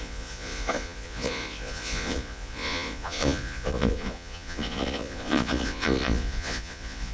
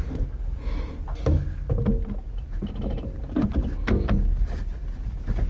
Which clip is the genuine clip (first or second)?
second